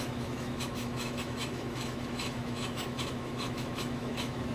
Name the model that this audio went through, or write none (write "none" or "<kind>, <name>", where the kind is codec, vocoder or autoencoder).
autoencoder, DAC-VAE